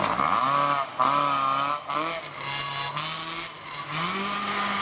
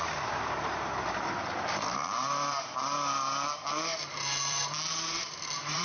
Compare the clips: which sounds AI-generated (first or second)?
second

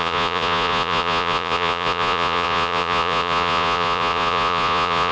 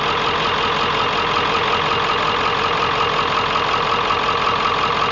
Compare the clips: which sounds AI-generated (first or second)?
first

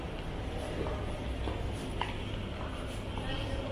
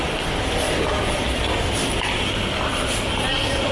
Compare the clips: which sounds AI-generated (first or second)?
second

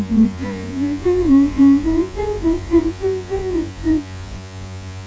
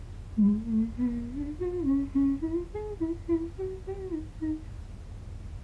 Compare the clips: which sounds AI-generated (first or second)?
first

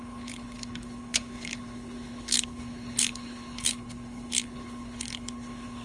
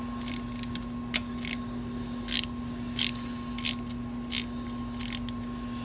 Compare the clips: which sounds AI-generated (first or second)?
first